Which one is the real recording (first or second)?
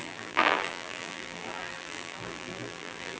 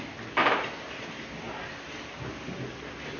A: second